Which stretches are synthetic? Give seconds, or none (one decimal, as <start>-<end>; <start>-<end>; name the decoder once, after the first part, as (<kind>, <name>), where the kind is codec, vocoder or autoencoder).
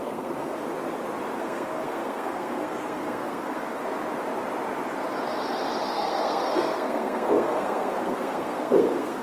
0.0-0.5 (codec, SNAC); 1.4-3.8; 5.8-9.2